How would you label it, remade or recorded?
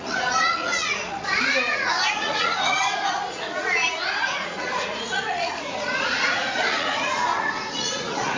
remade